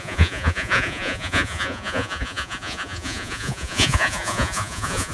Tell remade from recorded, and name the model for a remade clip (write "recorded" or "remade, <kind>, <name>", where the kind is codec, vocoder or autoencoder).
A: remade, vocoder, Vocos